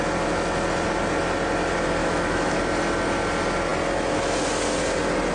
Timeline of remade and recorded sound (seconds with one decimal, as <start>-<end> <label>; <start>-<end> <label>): 0.0-2.0 recorded; 2.0-2.6 remade; 2.6-5.3 recorded